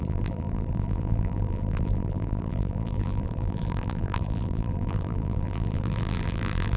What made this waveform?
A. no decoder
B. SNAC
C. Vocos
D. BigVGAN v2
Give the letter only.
D